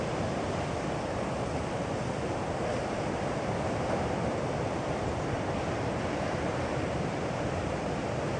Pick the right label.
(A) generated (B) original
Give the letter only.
A